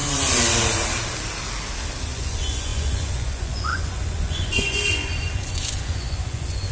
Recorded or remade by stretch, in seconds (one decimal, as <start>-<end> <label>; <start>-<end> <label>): 0.0-2.1 recorded; 2.1-6.7 remade